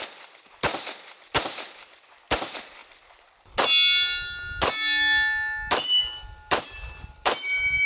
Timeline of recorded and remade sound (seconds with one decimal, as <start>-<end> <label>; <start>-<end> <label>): 0.0-7.9 recorded